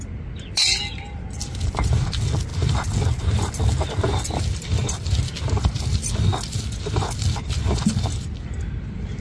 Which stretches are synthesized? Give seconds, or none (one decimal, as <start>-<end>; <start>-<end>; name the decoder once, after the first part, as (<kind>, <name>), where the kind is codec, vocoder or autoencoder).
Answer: none